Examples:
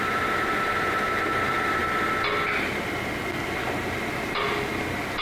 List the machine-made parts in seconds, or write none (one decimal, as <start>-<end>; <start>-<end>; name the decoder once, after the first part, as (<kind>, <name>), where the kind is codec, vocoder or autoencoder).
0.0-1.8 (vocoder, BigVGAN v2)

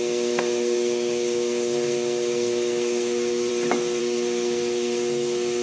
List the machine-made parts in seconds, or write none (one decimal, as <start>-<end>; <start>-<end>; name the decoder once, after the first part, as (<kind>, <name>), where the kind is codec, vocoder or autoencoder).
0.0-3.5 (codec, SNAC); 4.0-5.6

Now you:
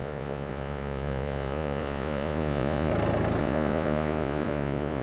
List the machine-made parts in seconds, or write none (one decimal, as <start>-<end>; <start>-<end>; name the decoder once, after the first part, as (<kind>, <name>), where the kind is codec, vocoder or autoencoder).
0.0-2.9 (vocoder, Vocos); 3.4-5.0

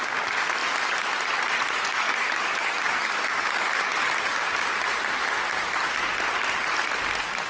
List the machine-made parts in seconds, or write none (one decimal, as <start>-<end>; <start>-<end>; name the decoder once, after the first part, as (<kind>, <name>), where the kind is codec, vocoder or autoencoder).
1.9-4.3 (codec, DAC)